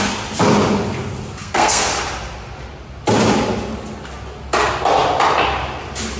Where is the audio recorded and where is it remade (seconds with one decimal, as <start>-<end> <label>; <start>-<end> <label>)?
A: 0.0-1.4 recorded; 1.4-1.9 remade; 1.9-6.2 recorded